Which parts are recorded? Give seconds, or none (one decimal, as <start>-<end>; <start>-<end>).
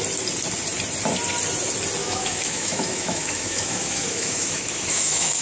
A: 0.0-2.0